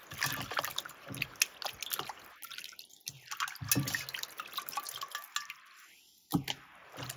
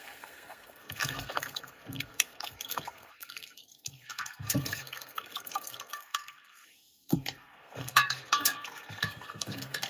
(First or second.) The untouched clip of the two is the first